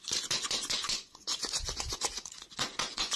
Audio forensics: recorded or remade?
remade